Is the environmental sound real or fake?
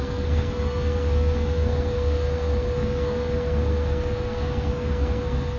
fake